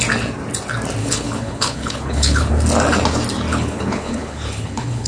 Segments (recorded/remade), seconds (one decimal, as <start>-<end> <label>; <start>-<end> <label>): 0.0-1.0 recorded; 1.0-2.5 remade; 2.5-3.5 recorded; 3.5-5.1 remade